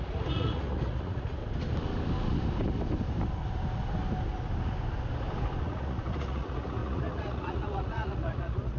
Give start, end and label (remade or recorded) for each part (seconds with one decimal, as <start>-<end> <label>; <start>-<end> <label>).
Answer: 0.0-1.4 remade; 1.4-5.6 recorded; 5.6-8.8 remade